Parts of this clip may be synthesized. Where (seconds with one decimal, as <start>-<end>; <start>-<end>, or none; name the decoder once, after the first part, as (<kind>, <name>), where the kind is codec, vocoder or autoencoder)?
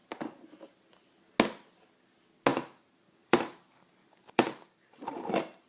2.5-5.3 (vocoder, BigVGAN v2)